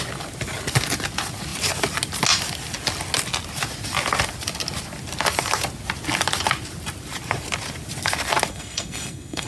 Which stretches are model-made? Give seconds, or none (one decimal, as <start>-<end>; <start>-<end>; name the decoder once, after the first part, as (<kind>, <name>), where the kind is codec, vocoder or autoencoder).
8.5-9.5 (codec, SNAC)